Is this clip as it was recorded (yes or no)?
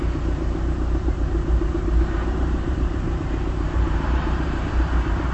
no